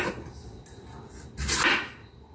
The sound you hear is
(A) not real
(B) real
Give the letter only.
B